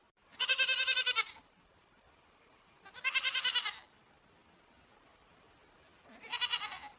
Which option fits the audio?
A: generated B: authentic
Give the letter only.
B